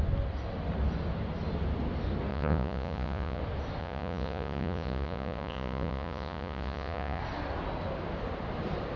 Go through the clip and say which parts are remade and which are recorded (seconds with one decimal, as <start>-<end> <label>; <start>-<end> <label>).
0.0-2.3 recorded; 2.3-3.4 remade; 3.4-3.8 recorded; 3.8-7.2 remade; 7.2-9.0 recorded